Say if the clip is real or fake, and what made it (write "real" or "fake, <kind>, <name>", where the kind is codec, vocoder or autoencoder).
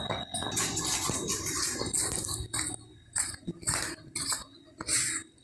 real